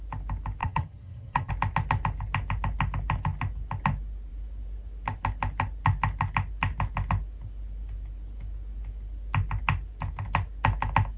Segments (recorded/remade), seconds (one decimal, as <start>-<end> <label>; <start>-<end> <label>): 0.0-0.6 recorded; 0.6-1.5 remade; 1.5-11.2 recorded